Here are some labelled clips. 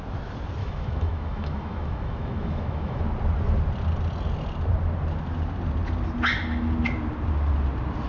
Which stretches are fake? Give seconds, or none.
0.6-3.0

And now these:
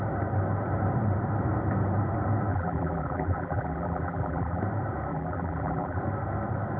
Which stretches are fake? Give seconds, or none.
2.5-4.6; 5.1-6.0

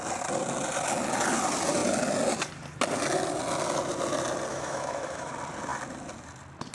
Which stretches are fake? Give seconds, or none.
4.5-5.3